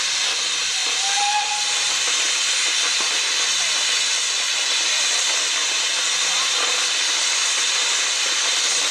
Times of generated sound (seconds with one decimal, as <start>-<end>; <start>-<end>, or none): none